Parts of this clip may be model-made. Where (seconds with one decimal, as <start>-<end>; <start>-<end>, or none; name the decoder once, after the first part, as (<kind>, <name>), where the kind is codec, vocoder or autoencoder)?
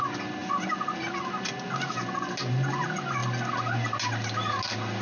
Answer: none